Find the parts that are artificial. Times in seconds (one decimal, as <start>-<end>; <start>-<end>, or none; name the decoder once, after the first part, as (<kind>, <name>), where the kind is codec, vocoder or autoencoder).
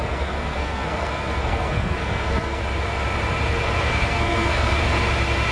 0.0-2.6 (codec, SNAC); 3.8-4.8